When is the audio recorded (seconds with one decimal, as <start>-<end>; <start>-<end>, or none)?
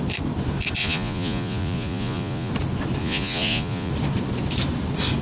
0.0-0.8; 2.5-3.0; 3.9-5.2